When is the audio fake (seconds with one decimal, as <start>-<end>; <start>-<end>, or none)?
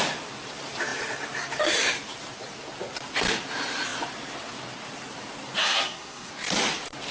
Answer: 5.6-6.3